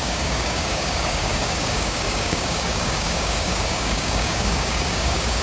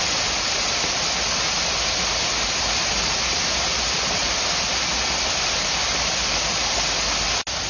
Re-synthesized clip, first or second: first